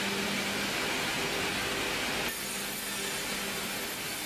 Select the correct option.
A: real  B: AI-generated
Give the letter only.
A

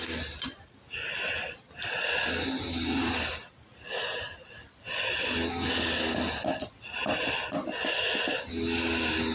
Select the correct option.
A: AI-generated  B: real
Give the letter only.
B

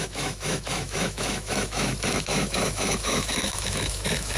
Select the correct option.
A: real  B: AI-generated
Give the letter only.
B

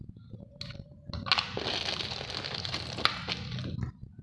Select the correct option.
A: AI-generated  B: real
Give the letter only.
B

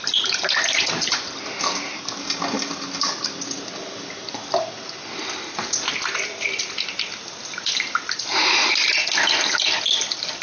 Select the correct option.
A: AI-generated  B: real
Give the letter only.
B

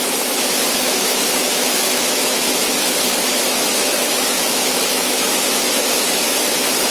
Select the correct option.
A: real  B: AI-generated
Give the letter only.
B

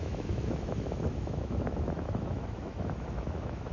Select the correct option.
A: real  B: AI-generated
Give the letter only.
B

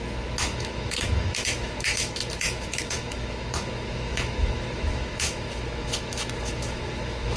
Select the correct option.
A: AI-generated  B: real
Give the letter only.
A